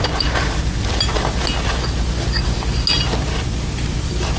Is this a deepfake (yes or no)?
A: no